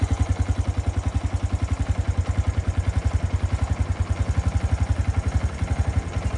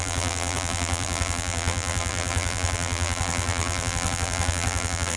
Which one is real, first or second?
first